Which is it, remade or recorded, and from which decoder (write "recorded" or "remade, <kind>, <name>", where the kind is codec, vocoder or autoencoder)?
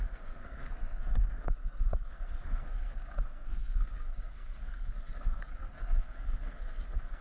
remade, codec, SNAC